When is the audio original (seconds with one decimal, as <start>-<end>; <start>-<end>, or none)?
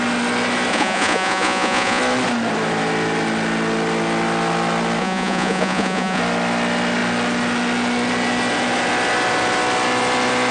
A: 0.0-0.7; 2.0-5.0; 6.2-10.5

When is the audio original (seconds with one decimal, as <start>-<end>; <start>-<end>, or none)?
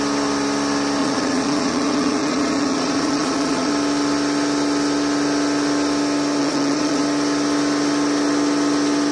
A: 0.0-1.0; 3.7-6.4; 7.0-9.1